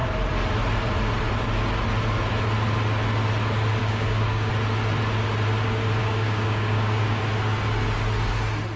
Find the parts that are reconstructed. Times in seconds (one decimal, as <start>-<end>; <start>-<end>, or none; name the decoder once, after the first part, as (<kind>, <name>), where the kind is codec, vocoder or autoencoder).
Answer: 3.8-4.5 (codec, DAC); 6.0-7.2